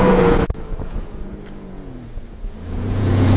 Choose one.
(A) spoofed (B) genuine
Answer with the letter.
A